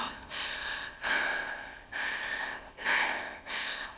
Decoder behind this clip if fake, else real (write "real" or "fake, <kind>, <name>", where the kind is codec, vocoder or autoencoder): fake, codec, ZipCodec